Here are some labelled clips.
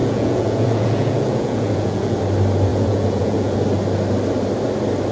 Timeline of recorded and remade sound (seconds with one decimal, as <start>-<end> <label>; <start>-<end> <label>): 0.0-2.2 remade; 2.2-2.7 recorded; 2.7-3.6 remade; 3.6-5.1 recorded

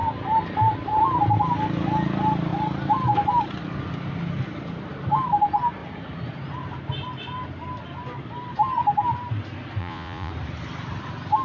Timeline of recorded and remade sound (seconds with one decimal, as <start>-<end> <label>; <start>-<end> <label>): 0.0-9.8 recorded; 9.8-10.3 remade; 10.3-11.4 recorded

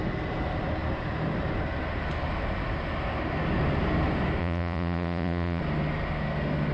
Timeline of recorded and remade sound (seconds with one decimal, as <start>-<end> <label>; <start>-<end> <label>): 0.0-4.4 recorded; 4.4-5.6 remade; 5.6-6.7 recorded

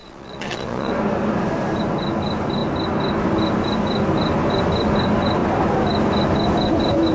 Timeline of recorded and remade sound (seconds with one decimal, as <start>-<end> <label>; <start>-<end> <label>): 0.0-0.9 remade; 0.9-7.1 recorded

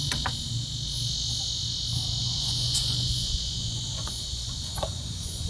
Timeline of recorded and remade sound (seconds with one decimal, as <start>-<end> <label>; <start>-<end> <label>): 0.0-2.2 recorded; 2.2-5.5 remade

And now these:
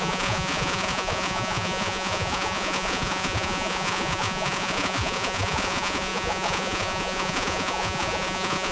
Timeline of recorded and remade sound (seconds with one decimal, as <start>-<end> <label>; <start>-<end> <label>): 0.0-8.7 remade

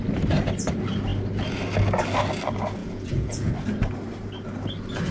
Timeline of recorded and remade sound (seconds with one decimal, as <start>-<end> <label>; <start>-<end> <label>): 0.0-2.8 recorded; 2.8-3.5 remade; 3.5-5.1 recorded

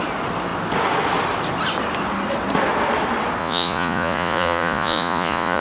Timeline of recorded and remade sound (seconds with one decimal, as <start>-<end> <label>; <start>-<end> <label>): 0.0-3.4 recorded; 3.4-5.6 remade